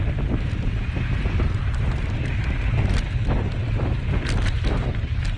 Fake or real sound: real